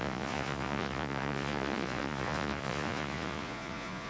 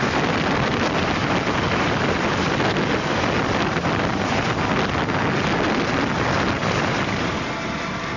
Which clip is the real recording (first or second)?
second